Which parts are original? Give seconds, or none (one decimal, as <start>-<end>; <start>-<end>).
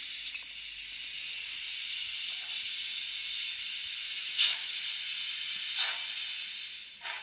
0.0-4.0; 4.7-7.2